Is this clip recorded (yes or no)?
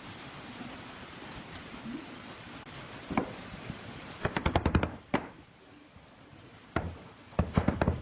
no